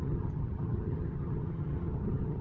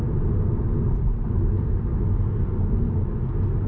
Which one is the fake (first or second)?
first